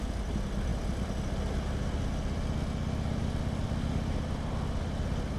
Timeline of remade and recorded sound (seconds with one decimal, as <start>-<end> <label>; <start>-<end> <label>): 0.0-5.4 recorded